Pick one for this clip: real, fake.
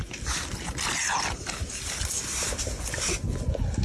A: real